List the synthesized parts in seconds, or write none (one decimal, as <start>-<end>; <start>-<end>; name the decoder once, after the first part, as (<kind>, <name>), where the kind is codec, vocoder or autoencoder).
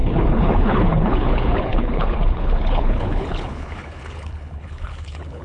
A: 0.0-5.4 (codec, HILCodec)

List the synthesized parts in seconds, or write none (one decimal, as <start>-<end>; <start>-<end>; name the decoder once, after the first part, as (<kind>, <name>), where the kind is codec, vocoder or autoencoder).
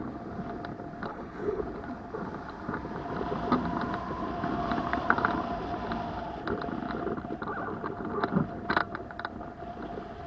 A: 1.1-1.6 (codec, HILCodec)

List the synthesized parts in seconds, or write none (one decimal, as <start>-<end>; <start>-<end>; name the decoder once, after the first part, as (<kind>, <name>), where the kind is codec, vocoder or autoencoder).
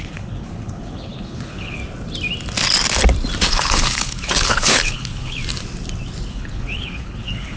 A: 0.0-1.8 (codec, HILCodec); 3.5-5.4; 6.3-7.6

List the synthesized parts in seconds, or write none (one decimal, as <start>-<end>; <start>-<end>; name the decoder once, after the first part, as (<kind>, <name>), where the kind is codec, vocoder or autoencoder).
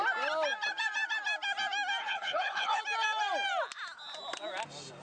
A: 2.0-2.8 (codec, HILCodec)